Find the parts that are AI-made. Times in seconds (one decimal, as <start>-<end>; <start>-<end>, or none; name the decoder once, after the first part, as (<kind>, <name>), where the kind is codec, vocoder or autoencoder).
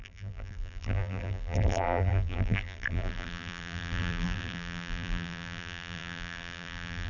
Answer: 0.0-7.1 (vocoder, BigVGAN v2)